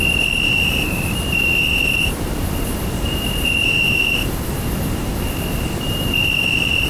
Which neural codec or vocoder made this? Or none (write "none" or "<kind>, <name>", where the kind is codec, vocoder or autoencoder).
vocoder, BigVGAN v2